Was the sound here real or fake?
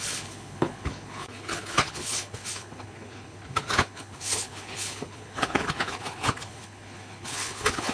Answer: fake